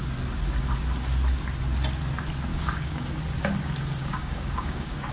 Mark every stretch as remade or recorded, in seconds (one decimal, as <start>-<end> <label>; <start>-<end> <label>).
0.0-2.5 recorded; 2.5-3.2 remade; 3.2-4.0 recorded; 4.0-5.1 remade